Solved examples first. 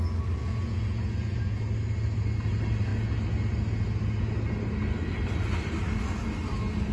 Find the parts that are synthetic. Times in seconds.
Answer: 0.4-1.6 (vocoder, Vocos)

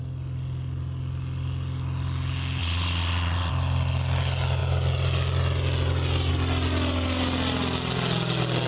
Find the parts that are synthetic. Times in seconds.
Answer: 2.6-3.5 (vocoder, Vocos)